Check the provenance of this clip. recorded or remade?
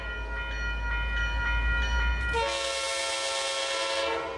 recorded